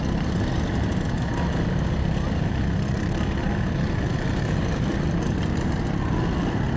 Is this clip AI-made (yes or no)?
no